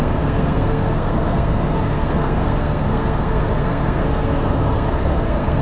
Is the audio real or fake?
fake